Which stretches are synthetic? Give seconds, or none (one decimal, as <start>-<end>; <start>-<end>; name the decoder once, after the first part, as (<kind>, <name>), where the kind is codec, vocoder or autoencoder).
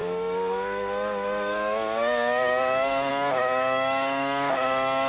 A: 0.0-5.1 (codec, DAC)